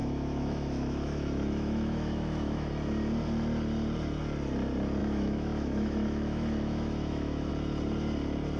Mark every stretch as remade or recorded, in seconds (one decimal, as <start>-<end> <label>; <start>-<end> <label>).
0.0-2.7 remade; 2.7-5.0 recorded; 5.0-7.5 remade; 7.5-8.6 recorded